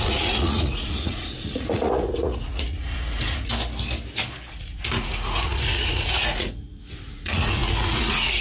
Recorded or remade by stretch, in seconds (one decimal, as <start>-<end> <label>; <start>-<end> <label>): 0.0-3.5 remade; 3.5-4.5 recorded; 4.5-8.4 remade